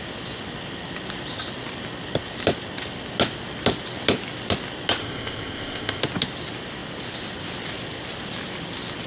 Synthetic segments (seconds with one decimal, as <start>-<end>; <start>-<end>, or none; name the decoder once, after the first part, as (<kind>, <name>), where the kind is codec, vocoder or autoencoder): 5.0-6.0 (codec, ZipCodec)